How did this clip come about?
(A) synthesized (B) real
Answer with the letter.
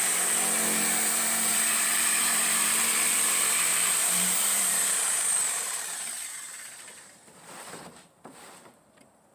A